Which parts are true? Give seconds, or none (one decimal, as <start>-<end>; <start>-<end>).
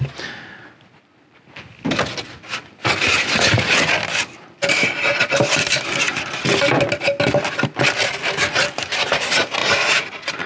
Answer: 0.0-10.5